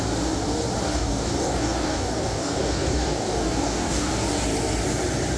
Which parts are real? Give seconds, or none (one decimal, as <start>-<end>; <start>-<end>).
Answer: 0.0-0.9; 4.1-5.4